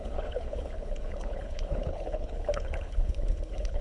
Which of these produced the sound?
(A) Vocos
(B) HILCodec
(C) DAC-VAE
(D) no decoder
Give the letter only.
B